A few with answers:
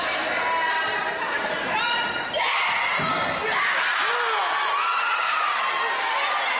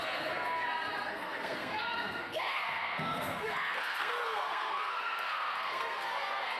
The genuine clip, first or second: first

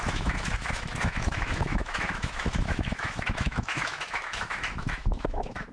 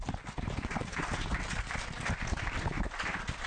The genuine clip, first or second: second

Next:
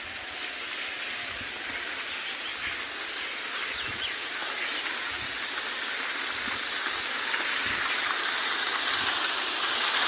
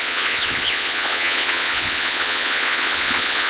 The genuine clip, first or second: first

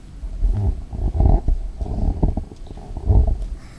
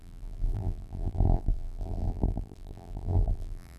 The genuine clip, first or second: first